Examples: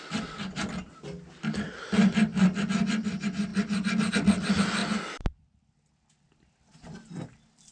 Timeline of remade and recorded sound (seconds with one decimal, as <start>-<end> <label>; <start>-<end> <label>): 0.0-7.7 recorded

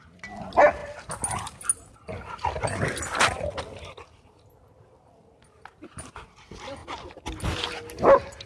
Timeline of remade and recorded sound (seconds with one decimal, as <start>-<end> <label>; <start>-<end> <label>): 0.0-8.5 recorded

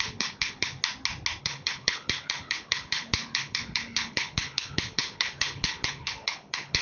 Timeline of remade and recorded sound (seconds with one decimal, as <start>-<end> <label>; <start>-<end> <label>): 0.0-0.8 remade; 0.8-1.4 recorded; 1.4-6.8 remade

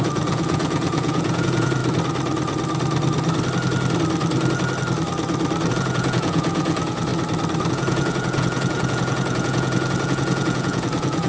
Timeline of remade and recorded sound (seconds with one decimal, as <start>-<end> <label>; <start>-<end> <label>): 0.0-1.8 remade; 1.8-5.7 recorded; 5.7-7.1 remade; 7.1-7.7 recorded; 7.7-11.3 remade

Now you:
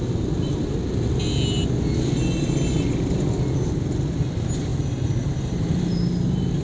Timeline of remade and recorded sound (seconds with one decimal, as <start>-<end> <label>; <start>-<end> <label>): 0.0-6.6 recorded

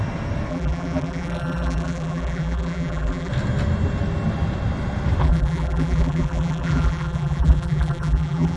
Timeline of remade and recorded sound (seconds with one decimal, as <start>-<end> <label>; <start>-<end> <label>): 0.0-0.5 recorded; 0.5-3.3 remade; 3.3-5.2 recorded; 5.2-8.6 remade

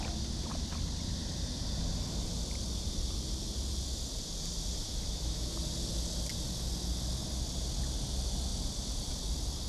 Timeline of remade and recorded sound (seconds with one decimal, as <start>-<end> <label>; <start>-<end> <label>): 0.0-4.8 recorded; 4.8-5.5 remade; 5.5-9.7 recorded